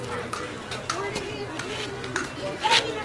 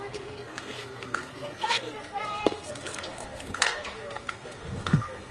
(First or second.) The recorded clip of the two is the first